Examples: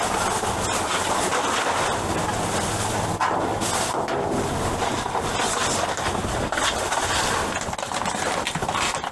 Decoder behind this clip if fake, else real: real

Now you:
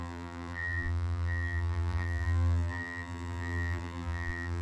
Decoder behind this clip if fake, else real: fake, vocoder, BigVGAN v2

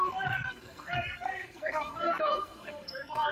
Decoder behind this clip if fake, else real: fake, codec, SNAC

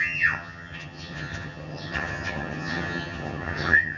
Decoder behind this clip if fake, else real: fake, vocoder, HiFi-GAN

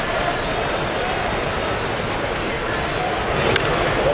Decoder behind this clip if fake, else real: real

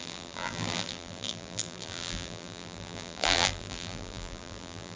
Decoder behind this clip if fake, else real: fake, vocoder, BigVGAN v2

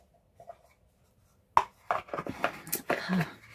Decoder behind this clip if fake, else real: real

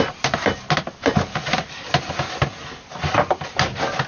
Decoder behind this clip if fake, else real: real